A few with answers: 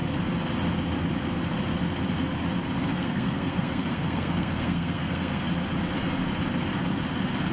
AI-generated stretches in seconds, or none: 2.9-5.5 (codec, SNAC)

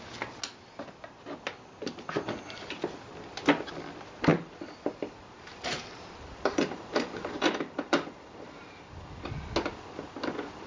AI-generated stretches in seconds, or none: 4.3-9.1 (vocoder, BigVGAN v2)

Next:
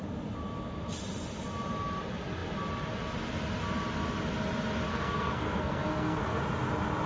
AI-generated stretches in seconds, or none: 4.9-6.4 (codec, SNAC)

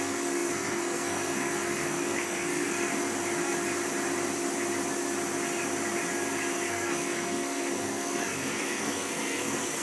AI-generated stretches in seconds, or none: 0.0-2.9 (codec, SNAC); 6.7-9.8

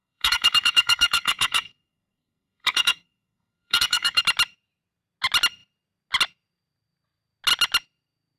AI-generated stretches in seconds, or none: 0.0-4.2 (codec, SNAC)